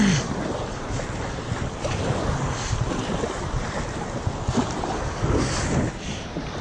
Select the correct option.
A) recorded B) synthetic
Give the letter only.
A